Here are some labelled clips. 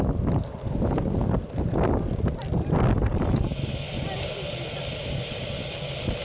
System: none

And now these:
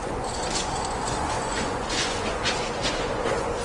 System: vocoder, Vocos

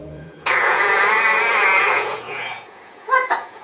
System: vocoder, Vocos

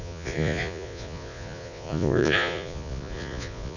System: vocoder, Vocos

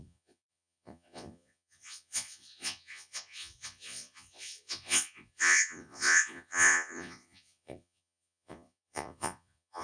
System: vocoder, Vocos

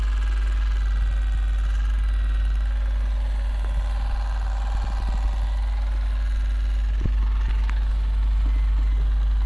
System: none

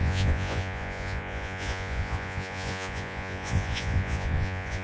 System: vocoder, Vocos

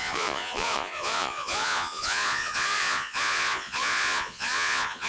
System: vocoder, Vocos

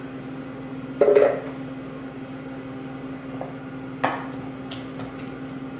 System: none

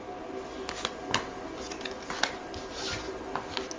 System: none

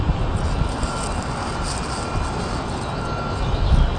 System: none